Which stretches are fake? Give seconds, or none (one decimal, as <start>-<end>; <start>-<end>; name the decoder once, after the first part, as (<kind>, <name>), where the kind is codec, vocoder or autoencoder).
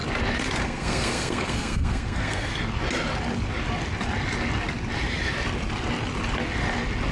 0.6-2.5 (codec, SNAC)